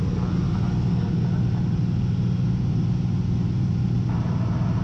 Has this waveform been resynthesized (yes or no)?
no